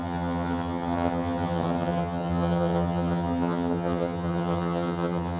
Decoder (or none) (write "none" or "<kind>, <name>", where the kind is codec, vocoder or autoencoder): vocoder, HiFi-GAN